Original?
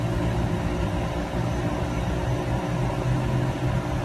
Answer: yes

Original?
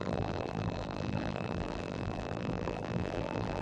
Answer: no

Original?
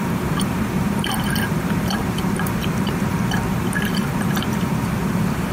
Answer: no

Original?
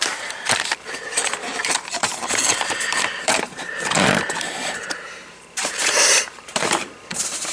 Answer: no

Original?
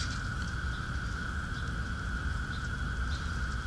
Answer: yes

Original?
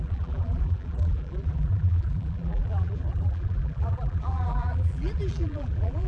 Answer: no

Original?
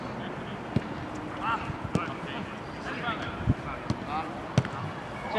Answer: yes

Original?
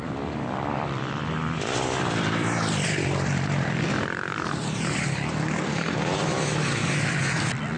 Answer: no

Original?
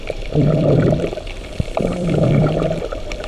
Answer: no